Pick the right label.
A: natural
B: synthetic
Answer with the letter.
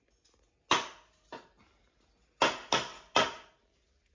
A